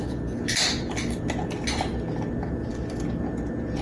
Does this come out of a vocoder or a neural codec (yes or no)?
no